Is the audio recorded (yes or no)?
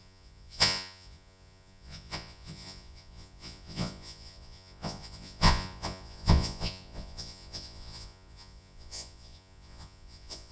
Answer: no